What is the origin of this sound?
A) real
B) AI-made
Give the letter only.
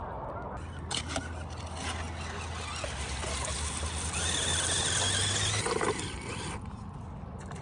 A